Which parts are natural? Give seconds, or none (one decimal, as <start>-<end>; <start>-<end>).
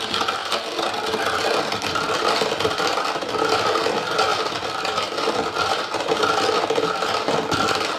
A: 0.0-0.4; 1.2-8.0